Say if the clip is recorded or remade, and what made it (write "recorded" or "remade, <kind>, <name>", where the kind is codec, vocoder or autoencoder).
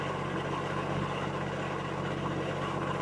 recorded